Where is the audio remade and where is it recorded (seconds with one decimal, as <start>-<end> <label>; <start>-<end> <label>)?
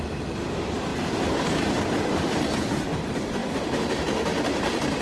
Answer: 0.0-5.0 recorded